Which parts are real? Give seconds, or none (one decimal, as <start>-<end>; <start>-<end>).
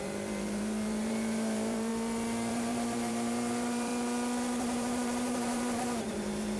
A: 1.9-2.5; 3.9-4.6